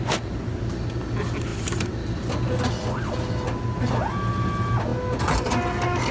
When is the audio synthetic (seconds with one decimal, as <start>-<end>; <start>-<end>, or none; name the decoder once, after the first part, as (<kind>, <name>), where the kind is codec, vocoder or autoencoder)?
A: none